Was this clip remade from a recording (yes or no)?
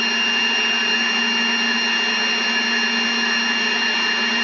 no